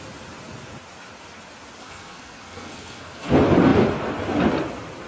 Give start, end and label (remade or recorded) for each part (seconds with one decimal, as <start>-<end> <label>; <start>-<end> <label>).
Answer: 0.0-1.8 recorded; 1.8-3.3 remade; 3.3-5.1 recorded